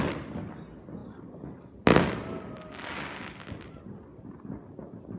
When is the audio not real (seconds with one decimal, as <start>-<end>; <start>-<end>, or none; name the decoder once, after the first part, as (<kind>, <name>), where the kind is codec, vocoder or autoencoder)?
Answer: none